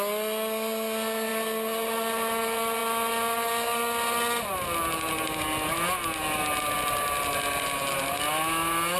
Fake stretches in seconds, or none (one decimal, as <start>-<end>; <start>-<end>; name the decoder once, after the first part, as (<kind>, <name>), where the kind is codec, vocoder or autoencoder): none